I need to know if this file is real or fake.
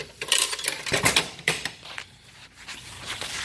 fake